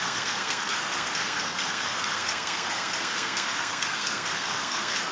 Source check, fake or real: fake